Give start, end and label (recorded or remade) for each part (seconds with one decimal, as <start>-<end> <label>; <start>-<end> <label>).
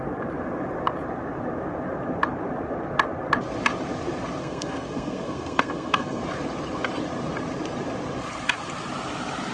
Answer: 0.0-4.4 recorded; 4.4-6.2 remade; 6.2-9.5 recorded